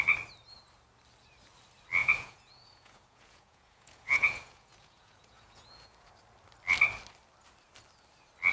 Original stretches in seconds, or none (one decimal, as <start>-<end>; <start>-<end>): 0.0-2.0; 6.1-8.5

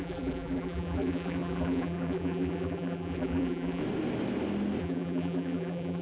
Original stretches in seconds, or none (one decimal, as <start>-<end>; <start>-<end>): 3.8-4.8

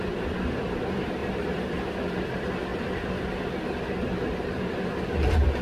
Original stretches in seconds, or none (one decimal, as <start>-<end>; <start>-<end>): 0.0-1.2; 1.8-5.6

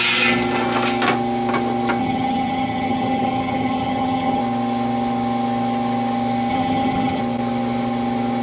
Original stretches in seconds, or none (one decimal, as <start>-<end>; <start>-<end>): 0.0-2.0; 4.4-6.5; 7.2-8.4

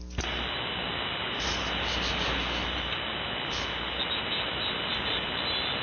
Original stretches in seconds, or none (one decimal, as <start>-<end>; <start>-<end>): 0.0-5.8

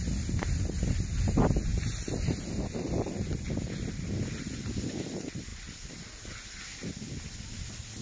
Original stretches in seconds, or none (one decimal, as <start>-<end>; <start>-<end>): 0.0-8.0

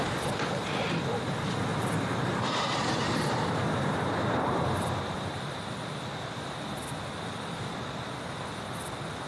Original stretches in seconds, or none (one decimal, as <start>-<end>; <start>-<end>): 0.0-1.7; 5.4-9.3

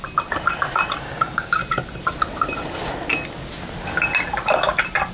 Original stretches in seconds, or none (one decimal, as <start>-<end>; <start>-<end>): 0.0-1.0; 1.6-5.1